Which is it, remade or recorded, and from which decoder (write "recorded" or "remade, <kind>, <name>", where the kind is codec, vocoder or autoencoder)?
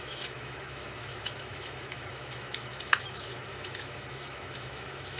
remade, autoencoder, DAC-VAE